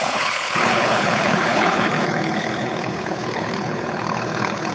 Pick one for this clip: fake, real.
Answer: fake